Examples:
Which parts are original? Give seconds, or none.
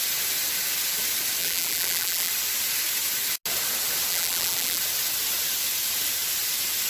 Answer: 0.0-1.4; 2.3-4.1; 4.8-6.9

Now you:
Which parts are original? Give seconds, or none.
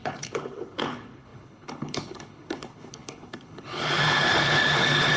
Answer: none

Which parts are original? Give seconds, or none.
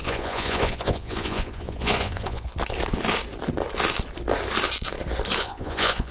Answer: 2.5-5.4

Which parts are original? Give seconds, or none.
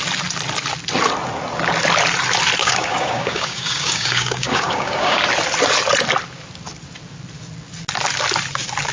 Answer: 0.0-2.6; 5.2-8.9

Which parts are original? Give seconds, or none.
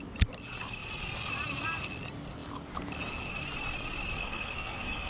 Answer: 0.0-4.2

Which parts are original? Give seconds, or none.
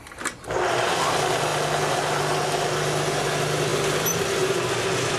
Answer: 0.0-3.7; 4.7-5.2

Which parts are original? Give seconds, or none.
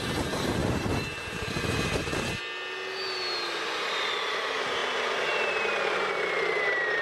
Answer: 0.0-0.6; 2.4-7.0